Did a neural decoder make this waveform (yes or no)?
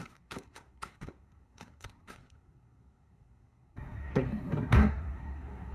yes